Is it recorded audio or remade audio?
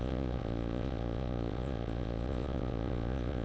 remade